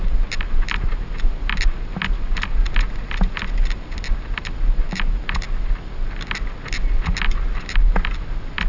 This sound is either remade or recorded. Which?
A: recorded